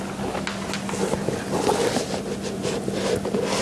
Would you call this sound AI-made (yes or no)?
no